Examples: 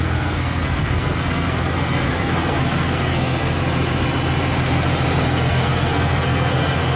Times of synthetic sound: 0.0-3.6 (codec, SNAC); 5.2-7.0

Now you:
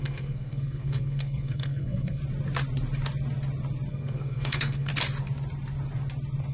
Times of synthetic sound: 0.0-2.2 (codec, SNAC); 3.9-4.9

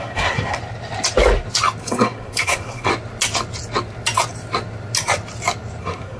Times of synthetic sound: 0.0-0.6 (codec, SNAC); 1.8-2.9; 5.8-6.2